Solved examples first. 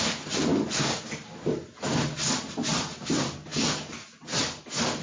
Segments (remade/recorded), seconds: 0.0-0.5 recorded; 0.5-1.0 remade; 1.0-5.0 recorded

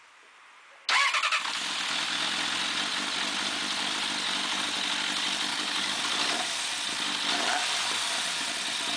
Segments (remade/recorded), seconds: 0.0-5.5 recorded; 5.5-6.0 remade; 6.0-9.0 recorded

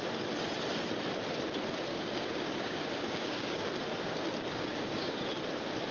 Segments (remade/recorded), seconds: 0.0-1.9 recorded; 1.9-3.7 remade; 3.7-4.5 recorded; 4.5-5.2 remade; 5.2-5.9 recorded

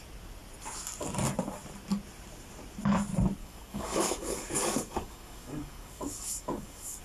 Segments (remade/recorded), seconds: 0.0-3.4 recorded; 3.4-7.0 remade

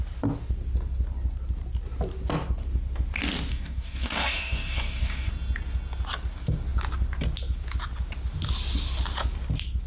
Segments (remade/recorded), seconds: 0.0-3.5 recorded; 3.5-5.3 remade; 5.3-9.9 recorded

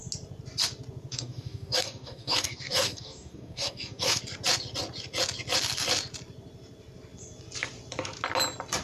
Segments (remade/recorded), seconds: 0.0-1.1 recorded; 1.1-4.2 remade; 4.2-8.8 recorded